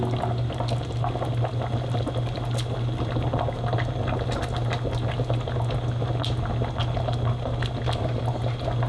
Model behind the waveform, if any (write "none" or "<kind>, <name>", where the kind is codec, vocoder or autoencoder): none